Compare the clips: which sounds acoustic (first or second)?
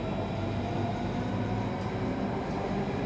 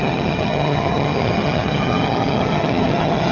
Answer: first